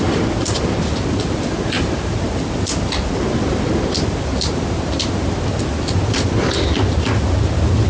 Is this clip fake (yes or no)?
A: no